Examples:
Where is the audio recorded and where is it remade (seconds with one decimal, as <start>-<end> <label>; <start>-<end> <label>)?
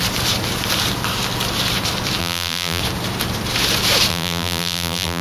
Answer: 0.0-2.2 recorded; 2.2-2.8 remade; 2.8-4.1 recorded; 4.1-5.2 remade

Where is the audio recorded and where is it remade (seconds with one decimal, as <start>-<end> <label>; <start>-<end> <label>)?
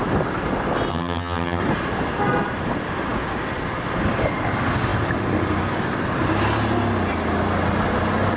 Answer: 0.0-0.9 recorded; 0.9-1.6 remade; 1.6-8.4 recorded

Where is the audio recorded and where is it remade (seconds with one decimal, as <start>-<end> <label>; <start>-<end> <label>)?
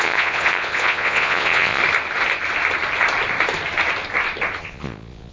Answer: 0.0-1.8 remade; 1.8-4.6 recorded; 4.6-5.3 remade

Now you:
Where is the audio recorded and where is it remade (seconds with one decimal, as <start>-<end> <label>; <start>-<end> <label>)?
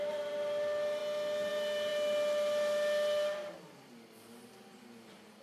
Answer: 0.0-5.4 recorded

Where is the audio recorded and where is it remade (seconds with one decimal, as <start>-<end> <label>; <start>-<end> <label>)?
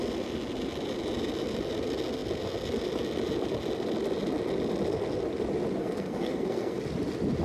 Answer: 0.0-5.8 recorded; 5.8-6.8 remade; 6.8-7.4 recorded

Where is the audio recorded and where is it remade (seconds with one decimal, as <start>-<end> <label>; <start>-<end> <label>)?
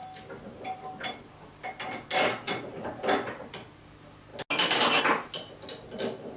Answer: 0.0-6.4 recorded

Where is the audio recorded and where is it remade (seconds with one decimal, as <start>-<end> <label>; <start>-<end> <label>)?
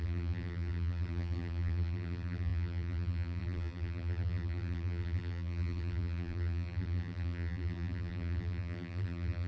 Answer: 0.0-9.5 remade